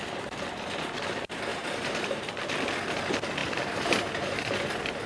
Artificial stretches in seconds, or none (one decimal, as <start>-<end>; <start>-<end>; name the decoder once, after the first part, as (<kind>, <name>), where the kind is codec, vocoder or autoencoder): 1.5-2.3 (vocoder, BigVGAN v2); 3.4-5.1